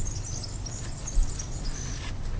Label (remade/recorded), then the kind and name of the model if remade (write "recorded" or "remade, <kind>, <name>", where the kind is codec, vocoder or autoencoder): recorded